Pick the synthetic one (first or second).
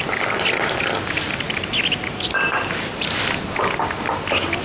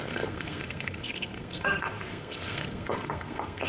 second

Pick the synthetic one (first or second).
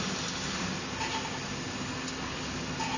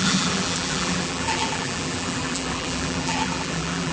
second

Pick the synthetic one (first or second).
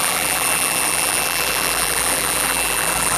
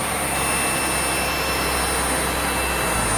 first